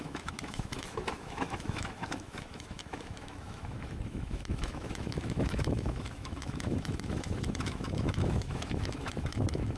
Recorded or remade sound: remade